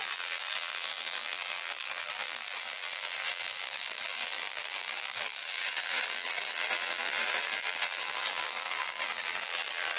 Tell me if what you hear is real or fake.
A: fake